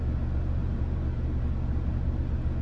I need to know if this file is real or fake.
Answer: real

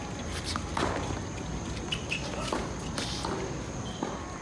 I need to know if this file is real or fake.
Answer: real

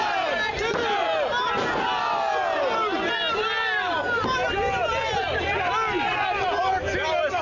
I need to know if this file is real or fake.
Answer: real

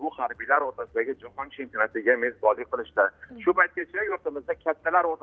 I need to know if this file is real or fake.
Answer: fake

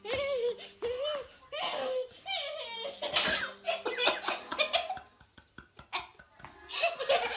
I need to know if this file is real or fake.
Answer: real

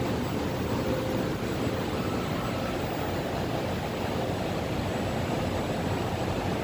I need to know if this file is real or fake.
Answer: real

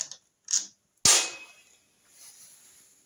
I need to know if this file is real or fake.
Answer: real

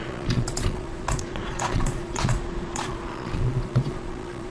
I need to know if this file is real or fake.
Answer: fake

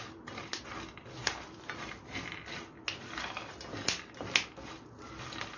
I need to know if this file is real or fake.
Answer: real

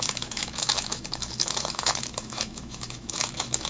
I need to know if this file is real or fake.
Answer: fake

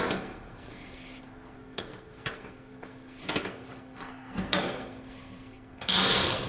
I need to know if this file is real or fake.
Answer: fake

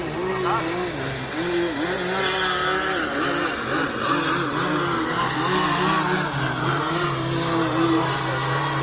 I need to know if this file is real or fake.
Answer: real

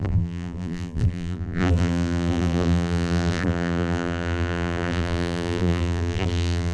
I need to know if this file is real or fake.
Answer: fake